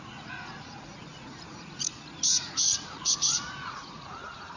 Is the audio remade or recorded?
remade